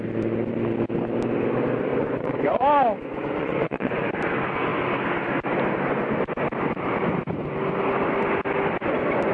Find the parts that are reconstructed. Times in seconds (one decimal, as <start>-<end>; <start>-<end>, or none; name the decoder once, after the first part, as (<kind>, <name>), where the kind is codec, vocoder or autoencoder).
1.9-4.1 (vocoder, Vocos)